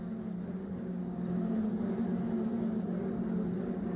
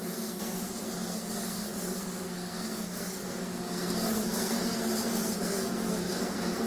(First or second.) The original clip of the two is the first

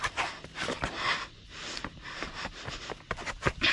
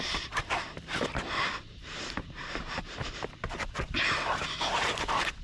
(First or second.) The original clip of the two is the first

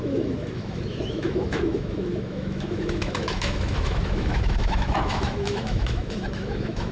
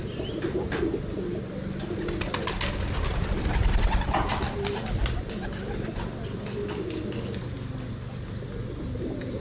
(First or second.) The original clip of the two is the second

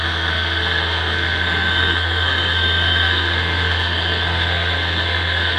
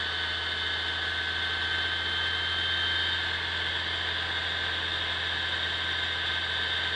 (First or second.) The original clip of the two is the second